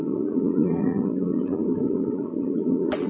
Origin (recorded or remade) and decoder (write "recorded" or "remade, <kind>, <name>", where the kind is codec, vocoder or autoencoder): remade, vocoder, Vocos